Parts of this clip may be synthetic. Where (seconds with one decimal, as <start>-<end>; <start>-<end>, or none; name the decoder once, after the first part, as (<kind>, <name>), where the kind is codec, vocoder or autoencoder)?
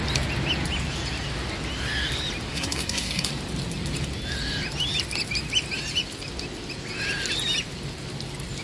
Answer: 2.5-3.3 (codec, SNAC)